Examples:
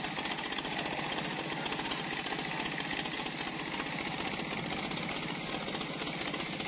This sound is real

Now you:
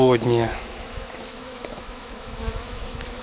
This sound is fake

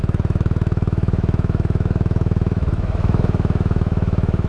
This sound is fake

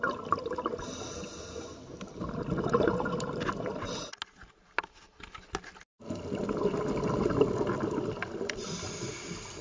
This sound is real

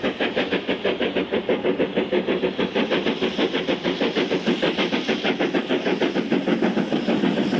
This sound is real